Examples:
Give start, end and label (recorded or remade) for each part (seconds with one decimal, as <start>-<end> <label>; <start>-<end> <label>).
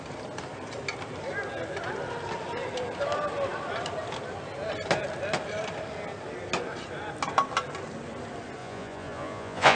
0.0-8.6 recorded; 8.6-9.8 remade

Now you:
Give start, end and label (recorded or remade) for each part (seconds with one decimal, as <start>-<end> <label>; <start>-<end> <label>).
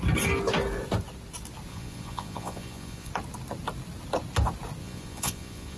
0.0-1.7 recorded; 1.7-3.1 remade; 3.1-4.8 recorded; 4.8-5.8 remade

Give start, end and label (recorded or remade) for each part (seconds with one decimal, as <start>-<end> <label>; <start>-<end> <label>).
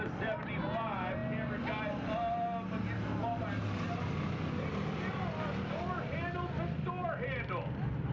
0.0-8.1 recorded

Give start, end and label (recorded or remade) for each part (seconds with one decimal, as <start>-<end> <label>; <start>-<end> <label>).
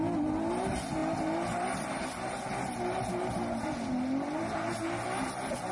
0.0-5.7 recorded